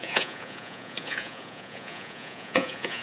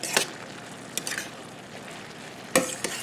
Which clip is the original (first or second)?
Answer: second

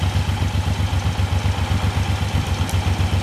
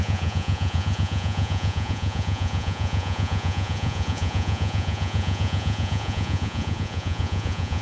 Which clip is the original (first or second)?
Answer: first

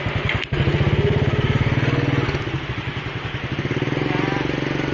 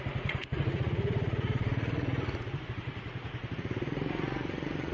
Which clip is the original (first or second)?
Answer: first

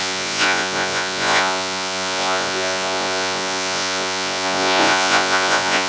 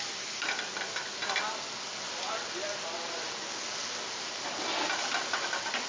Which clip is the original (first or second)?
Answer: second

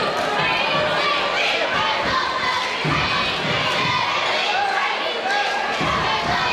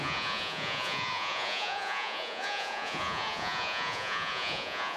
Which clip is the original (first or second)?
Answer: first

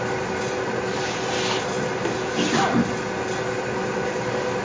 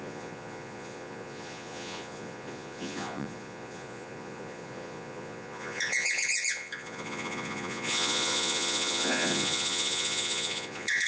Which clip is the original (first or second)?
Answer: first